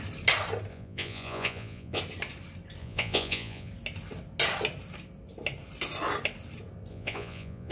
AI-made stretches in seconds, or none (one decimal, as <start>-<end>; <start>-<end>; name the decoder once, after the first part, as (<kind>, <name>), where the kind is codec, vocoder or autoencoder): 0.7-2.0 (vocoder, Vocos); 2.8-3.7; 6.9-7.7